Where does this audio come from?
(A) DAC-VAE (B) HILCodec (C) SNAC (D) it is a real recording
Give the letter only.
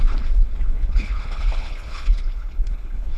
B